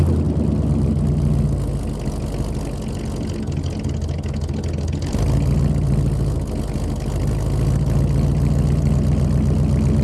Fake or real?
real